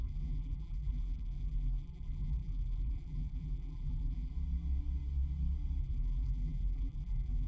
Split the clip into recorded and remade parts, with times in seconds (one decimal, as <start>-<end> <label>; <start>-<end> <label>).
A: 0.0-4.3 remade; 4.3-5.8 recorded; 5.8-7.5 remade

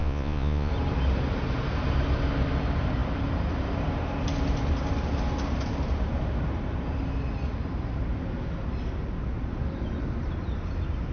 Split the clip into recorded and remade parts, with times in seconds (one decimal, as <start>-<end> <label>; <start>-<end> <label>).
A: 0.0-0.7 remade; 0.7-11.1 recorded

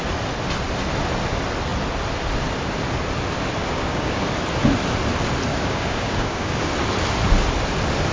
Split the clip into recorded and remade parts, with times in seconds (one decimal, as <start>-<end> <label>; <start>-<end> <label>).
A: 0.0-3.6 recorded; 3.6-4.2 remade; 4.2-5.5 recorded; 5.5-6.7 remade; 6.7-8.1 recorded

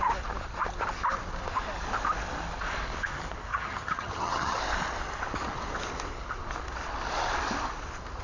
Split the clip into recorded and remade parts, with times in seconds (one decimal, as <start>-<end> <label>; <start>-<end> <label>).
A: 0.0-3.5 recorded; 3.5-4.6 remade; 4.6-8.2 recorded